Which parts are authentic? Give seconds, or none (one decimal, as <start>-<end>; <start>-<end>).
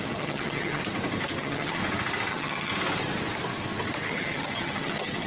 0.8-1.4; 1.8-2.3; 2.7-4.1